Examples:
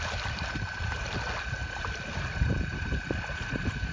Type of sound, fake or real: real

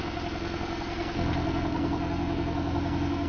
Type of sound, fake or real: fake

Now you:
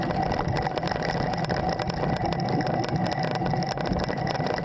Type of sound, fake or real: real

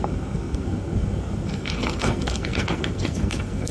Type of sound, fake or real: fake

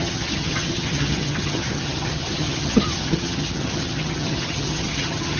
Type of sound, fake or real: fake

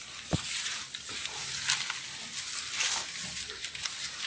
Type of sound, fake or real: real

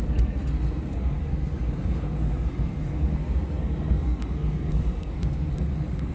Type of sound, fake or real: fake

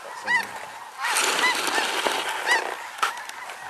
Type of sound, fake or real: real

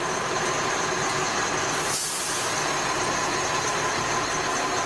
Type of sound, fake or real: real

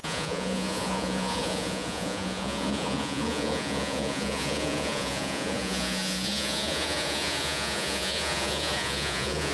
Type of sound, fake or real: fake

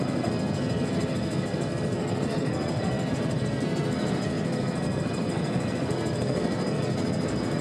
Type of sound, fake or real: fake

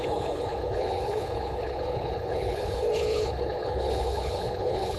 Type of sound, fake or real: fake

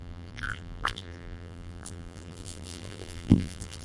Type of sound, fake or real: fake